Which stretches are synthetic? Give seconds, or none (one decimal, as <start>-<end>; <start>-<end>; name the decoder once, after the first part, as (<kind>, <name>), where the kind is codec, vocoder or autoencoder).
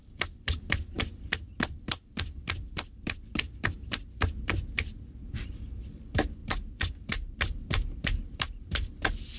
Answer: 0.0-0.7 (vocoder, BigVGAN v2); 1.1-4.0; 6.4-9.0